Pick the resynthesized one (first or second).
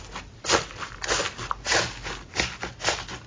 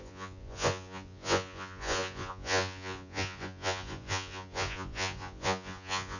second